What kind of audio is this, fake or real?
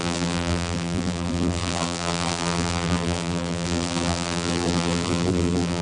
fake